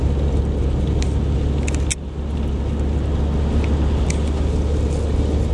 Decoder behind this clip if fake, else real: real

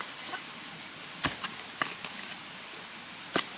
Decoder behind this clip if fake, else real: real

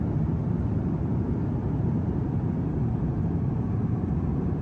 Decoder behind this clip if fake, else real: fake, vocoder, BigVGAN v2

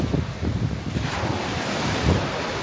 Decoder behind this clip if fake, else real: real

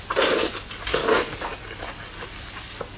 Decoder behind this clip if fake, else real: real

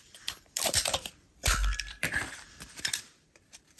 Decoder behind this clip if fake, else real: fake, vocoder, BigVGAN v2